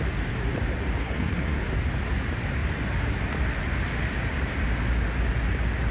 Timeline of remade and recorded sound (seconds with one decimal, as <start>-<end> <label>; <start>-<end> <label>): 0.0-1.0 recorded; 1.0-1.6 remade; 1.6-5.9 recorded